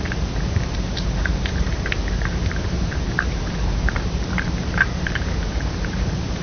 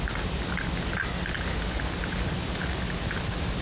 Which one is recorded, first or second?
second